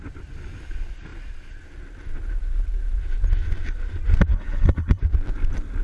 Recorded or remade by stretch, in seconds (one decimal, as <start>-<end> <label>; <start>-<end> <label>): 0.0-4.3 recorded; 4.3-5.0 remade; 5.0-5.8 recorded